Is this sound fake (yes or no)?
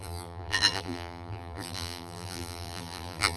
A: yes